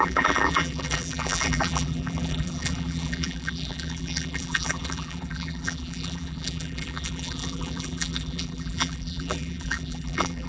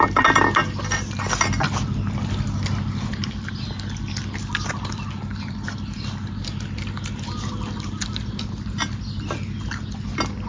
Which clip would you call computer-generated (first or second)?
first